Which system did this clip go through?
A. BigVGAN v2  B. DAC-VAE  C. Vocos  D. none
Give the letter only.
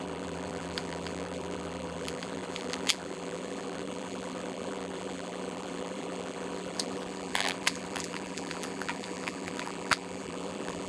A